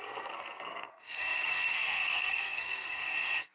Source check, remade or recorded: remade